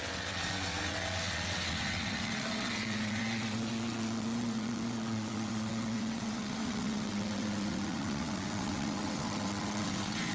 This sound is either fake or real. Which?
fake